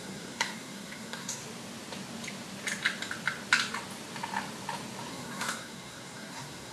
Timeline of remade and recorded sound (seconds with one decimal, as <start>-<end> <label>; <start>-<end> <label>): 0.0-1.4 remade; 1.4-5.1 recorded; 5.1-6.7 remade